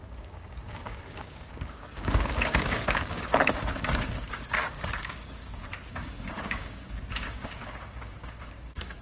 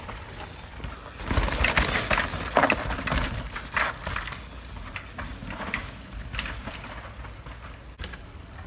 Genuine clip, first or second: second